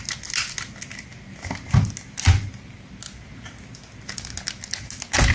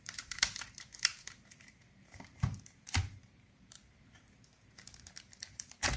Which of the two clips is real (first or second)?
first